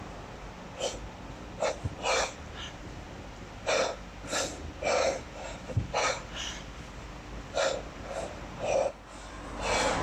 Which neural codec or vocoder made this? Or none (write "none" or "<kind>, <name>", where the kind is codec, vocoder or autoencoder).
none